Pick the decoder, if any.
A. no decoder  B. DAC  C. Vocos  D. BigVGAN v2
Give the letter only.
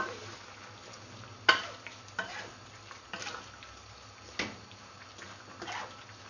A